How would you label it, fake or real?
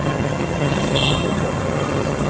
fake